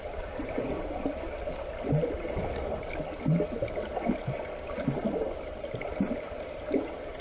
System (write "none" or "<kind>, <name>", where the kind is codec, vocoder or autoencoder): none